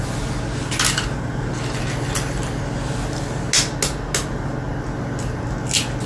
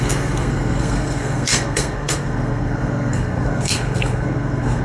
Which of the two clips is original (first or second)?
first